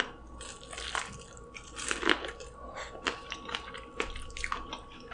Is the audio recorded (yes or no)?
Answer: yes